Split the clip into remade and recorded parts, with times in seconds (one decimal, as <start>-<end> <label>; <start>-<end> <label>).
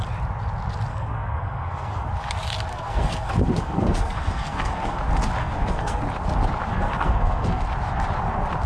0.0-0.9 recorded; 0.9-2.1 remade; 2.1-2.7 recorded; 2.7-5.0 remade; 5.0-5.4 recorded; 5.4-6.0 remade; 6.0-6.7 recorded; 6.7-7.6 remade; 7.6-8.7 recorded